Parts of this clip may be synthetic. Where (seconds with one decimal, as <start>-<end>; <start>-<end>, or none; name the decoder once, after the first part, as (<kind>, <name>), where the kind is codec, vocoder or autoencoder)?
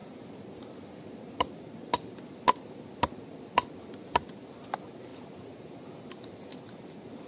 none